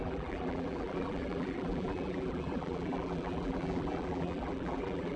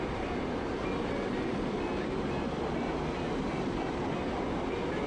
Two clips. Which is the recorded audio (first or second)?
second